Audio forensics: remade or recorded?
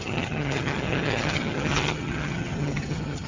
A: remade